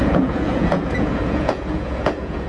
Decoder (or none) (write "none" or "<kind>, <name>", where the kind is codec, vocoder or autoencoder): vocoder, Vocos